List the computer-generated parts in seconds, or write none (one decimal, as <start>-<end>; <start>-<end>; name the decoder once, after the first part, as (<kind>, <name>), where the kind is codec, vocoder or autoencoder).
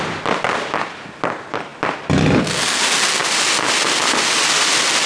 none